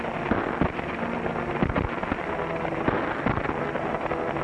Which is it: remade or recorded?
recorded